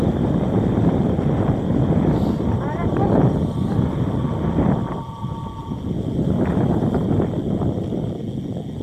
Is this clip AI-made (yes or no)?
no